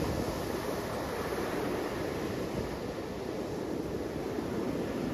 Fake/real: real